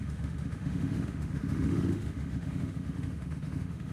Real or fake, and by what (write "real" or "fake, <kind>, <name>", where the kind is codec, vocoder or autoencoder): fake, autoencoder, DAC-VAE